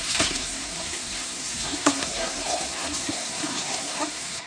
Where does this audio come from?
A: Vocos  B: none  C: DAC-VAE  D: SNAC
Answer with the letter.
D